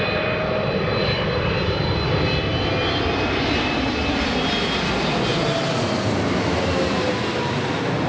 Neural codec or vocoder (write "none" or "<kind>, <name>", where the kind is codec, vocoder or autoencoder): none